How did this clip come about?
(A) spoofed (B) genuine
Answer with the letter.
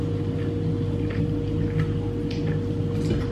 B